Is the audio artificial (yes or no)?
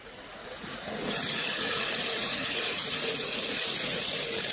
yes